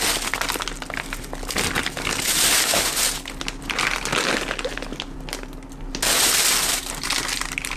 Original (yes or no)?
yes